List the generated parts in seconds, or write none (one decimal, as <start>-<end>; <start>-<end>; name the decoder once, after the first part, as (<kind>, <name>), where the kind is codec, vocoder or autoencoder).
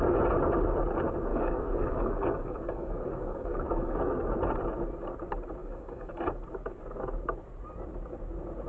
1.3-4.1 (codec, DAC); 5.6-6.2